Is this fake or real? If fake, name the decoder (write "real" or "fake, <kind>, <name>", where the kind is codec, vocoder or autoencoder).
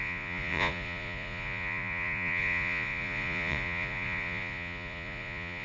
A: fake, vocoder, Vocos